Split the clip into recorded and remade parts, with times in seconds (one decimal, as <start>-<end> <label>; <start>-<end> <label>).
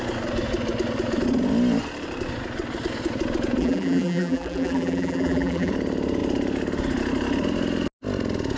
0.0-3.6 recorded; 3.6-5.7 remade; 5.7-8.6 recorded